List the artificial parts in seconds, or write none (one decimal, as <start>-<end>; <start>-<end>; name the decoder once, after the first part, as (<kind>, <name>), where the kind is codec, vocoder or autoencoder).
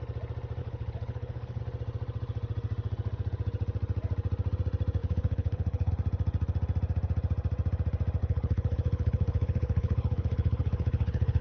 0.6-1.6 (codec, HILCodec); 5.0-5.9; 8.2-11.4